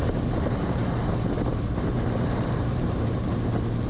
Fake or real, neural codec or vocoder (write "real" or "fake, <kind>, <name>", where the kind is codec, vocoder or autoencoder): fake, vocoder, BigVGAN v2